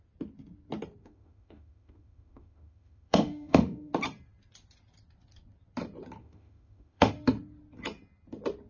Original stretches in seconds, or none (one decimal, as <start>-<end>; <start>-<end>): 0.0-1.0; 3.9-6.2; 7.1-8.7

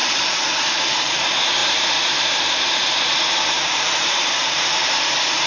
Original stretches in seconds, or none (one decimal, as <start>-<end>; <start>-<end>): 1.1-1.6; 4.9-5.5

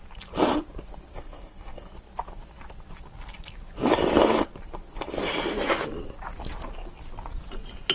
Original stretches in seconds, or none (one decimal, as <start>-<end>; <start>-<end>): 0.0-1.1; 1.9-7.9

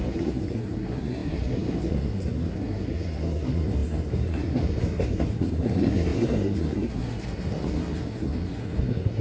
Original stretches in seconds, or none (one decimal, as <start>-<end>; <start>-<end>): none